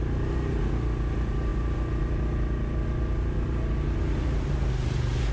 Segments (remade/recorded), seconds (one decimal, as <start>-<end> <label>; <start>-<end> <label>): 0.0-5.3 recorded